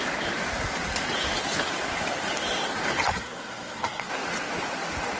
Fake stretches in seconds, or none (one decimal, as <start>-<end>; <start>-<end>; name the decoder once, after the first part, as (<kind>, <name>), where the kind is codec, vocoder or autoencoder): 3.1-4.1 (codec, SNAC)